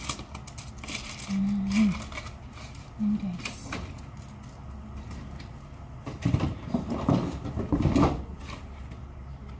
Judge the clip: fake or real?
real